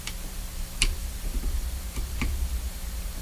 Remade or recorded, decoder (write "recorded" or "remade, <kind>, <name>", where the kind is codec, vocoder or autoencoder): remade, vocoder, BigVGAN v2